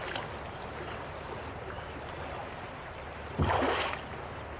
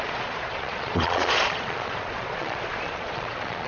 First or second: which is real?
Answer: first